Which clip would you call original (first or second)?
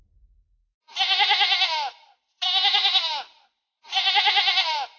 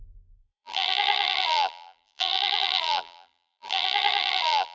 first